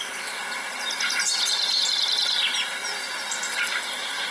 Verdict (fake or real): real